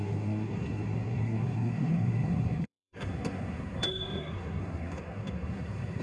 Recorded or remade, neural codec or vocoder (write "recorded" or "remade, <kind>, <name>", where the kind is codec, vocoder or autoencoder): remade, codec, SNAC